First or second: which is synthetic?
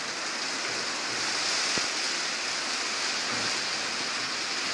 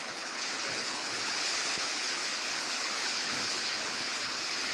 second